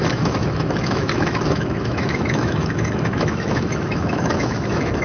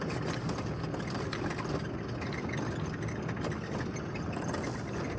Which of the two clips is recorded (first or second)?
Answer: second